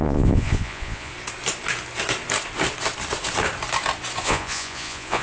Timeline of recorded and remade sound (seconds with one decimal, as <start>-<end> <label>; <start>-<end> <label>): 0.0-1.1 remade; 1.1-4.2 recorded; 4.2-5.2 remade

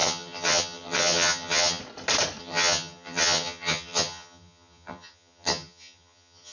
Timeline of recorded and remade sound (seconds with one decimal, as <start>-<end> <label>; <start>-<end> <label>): 0.0-1.8 remade; 1.8-2.4 recorded; 2.4-6.5 remade

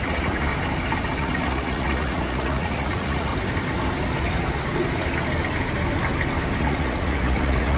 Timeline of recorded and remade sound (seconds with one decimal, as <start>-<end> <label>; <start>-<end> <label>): 0.0-0.5 remade; 0.5-1.2 recorded; 1.2-3.3 remade; 3.3-6.6 recorded; 6.6-7.8 remade

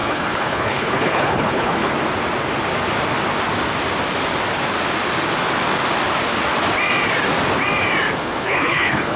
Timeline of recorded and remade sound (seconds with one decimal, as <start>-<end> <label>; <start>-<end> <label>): 0.0-1.9 remade; 1.9-8.2 recorded; 8.2-9.2 remade

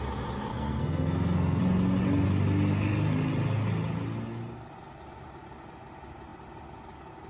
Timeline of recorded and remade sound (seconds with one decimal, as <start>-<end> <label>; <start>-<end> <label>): 0.0-0.5 recorded; 0.5-1.6 remade; 1.6-7.3 recorded

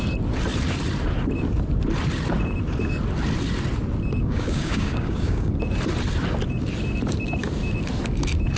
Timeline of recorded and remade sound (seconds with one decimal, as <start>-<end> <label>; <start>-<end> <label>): 0.0-4.2 recorded; 4.2-5.5 remade; 5.5-8.6 recorded

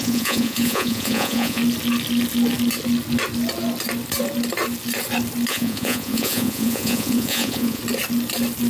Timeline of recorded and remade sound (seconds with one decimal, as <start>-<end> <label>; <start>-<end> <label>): 0.0-1.6 remade; 1.6-5.5 recorded; 5.5-7.8 remade; 7.8-8.7 recorded

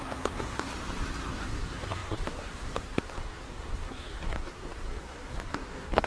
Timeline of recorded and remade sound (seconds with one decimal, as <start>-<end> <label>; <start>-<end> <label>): 0.0-0.7 remade; 0.7-1.3 recorded; 1.3-6.1 remade